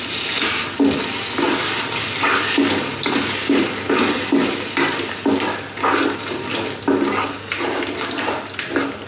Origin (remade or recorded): recorded